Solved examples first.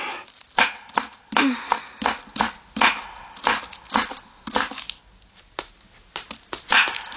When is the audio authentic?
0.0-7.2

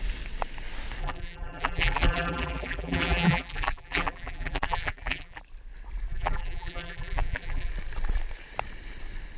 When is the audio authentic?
0.0-1.0; 5.4-6.1; 7.7-9.4

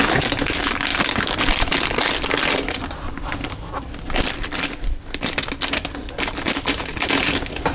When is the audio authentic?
0.0-0.9; 5.3-7.7

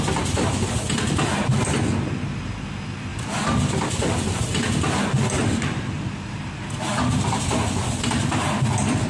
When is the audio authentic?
0.0-3.1; 7.4-9.1